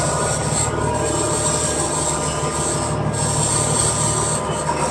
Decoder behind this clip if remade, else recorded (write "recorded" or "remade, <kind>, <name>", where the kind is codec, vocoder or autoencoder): recorded